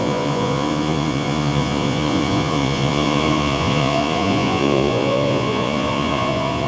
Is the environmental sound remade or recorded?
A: remade